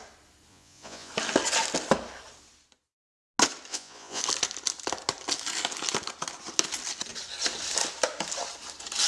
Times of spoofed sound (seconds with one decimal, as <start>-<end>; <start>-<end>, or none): 0.5-1.1; 3.7-4.2